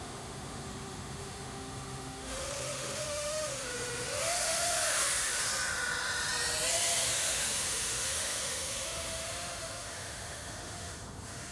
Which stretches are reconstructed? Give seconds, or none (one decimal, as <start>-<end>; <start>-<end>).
0.0-5.5; 6.7-11.5